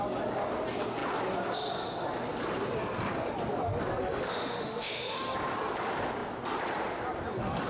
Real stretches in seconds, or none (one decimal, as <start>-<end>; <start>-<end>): 0.0-4.0; 5.2-7.7